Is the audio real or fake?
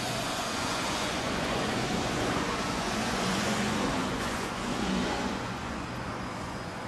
fake